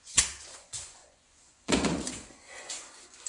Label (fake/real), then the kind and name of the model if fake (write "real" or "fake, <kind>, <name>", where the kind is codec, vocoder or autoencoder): fake, vocoder, Vocos